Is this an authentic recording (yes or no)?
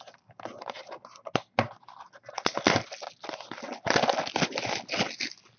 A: yes